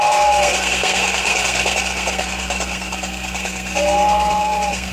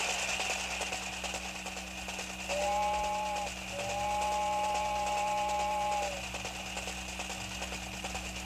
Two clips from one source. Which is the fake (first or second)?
first